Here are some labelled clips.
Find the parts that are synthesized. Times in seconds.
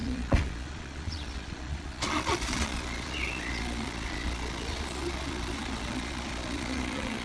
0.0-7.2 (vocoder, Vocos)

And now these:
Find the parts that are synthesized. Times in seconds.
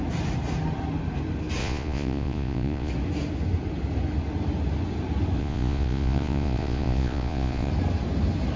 1.6-2.9 (vocoder, Vocos); 5.4-7.7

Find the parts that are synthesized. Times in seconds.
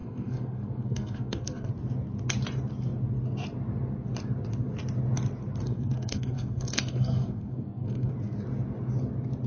0.0-1.7 (codec, SNAC); 5.6-8.1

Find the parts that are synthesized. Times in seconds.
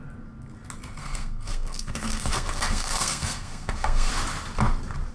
1.0-4.1 (codec, SNAC)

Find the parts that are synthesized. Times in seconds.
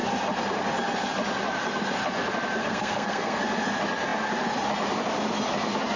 2.6-3.4 (codec, SNAC)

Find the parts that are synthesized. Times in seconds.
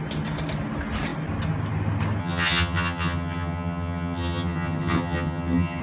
2.2-5.8 (vocoder, HiFi-GAN)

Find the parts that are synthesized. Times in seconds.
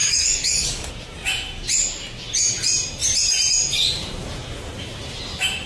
0.0-0.9 (codec, DAC)